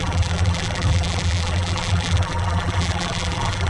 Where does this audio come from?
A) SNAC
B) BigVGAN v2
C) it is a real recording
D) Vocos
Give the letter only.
B